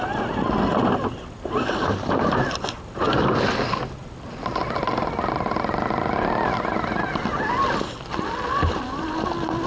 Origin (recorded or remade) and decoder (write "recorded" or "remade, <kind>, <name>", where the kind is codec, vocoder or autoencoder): recorded